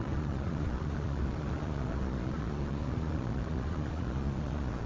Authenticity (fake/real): fake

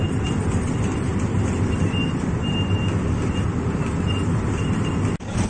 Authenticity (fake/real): real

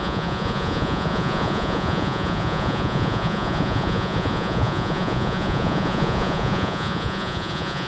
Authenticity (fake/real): fake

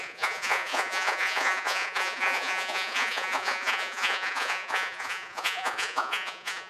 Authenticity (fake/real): fake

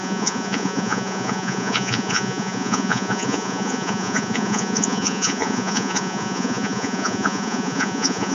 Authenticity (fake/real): fake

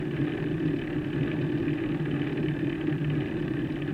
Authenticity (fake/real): real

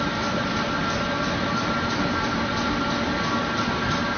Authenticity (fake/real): real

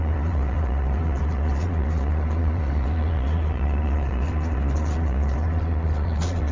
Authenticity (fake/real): fake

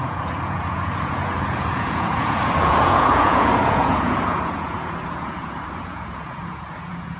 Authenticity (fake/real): fake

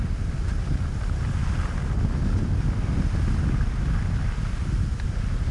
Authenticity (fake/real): real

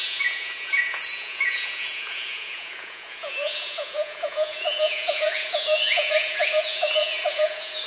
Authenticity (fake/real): fake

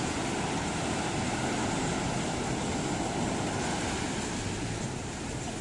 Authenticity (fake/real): real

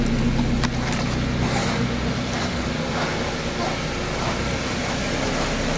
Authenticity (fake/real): real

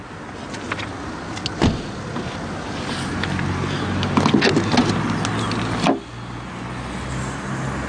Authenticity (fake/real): real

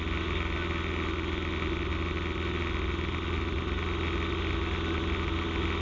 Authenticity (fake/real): real